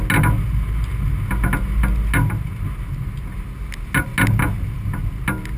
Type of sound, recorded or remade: recorded